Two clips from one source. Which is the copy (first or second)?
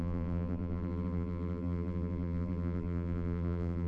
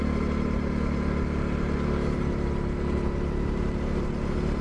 first